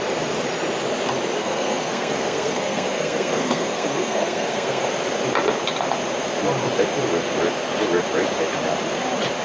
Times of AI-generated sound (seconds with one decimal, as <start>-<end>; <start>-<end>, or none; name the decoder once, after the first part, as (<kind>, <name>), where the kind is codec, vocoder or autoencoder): 1.4-4.9 (codec, SNAC)